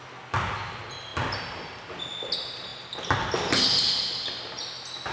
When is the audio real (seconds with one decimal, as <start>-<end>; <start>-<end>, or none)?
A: 0.0-5.1